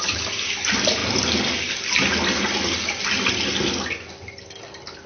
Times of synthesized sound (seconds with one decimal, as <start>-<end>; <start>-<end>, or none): none